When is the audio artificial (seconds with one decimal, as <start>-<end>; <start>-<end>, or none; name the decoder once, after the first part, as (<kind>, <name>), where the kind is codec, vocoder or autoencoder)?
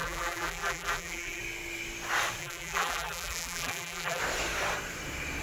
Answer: 0.0-1.4 (vocoder, BigVGAN v2); 2.4-4.2